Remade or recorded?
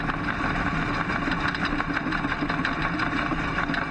recorded